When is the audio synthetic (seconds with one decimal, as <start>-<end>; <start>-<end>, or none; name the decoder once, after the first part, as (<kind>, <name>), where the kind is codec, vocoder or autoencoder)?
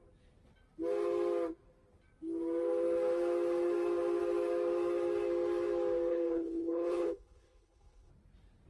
6.1-8.1 (codec, HILCodec)